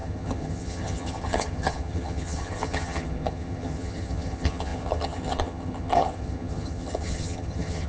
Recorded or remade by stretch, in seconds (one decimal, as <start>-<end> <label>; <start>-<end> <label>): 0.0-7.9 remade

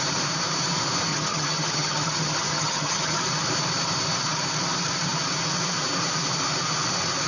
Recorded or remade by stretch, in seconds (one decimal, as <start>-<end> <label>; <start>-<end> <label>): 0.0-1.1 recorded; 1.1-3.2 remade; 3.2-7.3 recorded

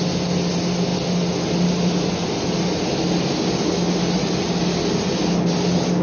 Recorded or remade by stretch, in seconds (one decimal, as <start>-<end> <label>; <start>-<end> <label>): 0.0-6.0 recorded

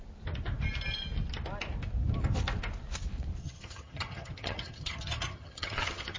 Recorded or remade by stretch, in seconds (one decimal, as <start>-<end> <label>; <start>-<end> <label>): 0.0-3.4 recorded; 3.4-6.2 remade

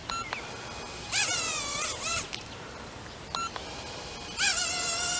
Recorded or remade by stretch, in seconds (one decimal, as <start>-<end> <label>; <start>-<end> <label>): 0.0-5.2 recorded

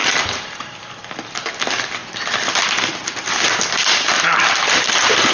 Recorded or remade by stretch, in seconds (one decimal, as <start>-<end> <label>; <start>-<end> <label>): 0.0-5.3 recorded

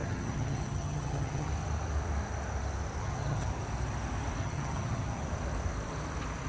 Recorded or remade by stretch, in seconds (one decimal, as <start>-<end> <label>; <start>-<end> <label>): 0.0-1.5 remade; 1.5-3.0 recorded; 3.0-3.5 remade; 3.5-4.4 recorded; 4.4-5.2 remade; 5.2-6.5 recorded

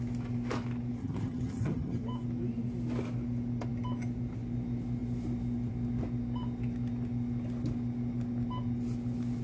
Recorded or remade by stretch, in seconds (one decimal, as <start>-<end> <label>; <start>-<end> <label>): 0.0-1.0 recorded; 1.0-2.0 remade; 2.0-9.4 recorded